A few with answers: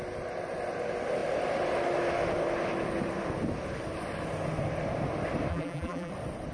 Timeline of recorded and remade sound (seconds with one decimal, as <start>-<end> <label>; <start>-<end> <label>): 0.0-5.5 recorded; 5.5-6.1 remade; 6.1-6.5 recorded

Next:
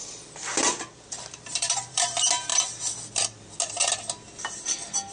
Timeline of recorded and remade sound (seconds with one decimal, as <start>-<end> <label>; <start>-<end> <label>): 0.0-0.5 recorded; 0.5-2.1 remade; 2.1-5.1 recorded

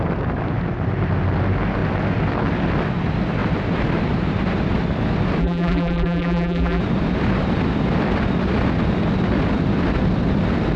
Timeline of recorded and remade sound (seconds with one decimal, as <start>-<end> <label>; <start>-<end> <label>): 0.0-5.4 recorded; 5.4-6.8 remade; 6.8-10.8 recorded

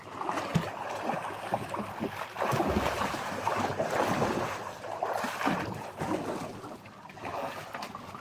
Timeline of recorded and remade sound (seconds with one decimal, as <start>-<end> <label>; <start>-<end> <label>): 0.0-8.2 recorded

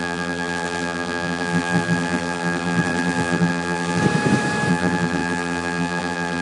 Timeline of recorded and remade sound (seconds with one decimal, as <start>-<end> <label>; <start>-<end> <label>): 0.0-4.0 remade; 4.0-4.7 recorded; 4.7-6.4 remade

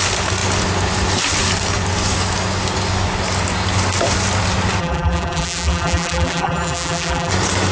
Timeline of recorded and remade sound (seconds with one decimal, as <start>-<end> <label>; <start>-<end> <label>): 0.0-4.8 recorded; 4.8-7.3 remade; 7.3-7.7 recorded

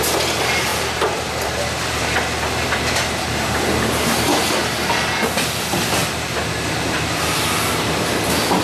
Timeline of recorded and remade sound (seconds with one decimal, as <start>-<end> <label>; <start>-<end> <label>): 0.0-0.7 recorded; 0.7-4.5 remade; 4.5-6.0 recorded; 6.0-6.9 remade; 6.9-8.6 recorded

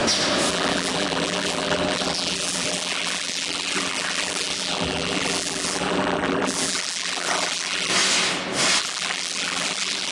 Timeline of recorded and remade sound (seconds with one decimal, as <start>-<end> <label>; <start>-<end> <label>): 0.0-0.5 recorded; 0.5-7.9 remade; 7.9-8.8 recorded; 8.8-10.1 remade